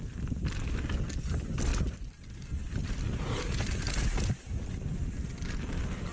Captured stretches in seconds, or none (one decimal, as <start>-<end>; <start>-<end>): 0.0-6.1